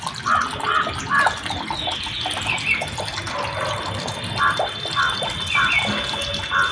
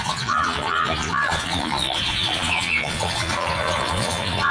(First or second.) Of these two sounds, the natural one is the first